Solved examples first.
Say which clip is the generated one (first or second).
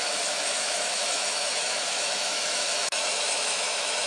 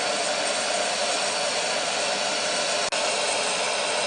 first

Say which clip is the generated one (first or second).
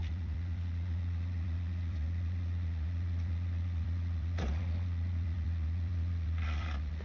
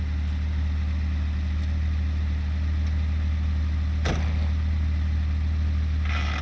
first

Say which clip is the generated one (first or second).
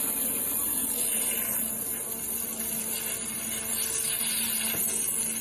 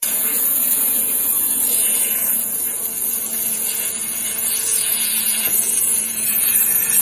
second